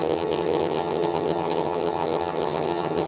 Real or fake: fake